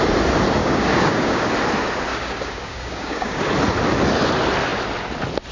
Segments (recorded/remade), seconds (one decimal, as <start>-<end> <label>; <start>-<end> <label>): 0.0-0.6 recorded; 0.6-1.5 remade; 1.5-2.1 recorded; 2.1-3.4 remade; 3.4-5.5 recorded